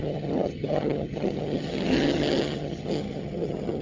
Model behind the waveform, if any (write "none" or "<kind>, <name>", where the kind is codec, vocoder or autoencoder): vocoder, HiFi-GAN